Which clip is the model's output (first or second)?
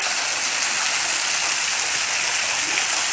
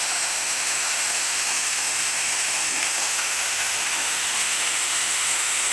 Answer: second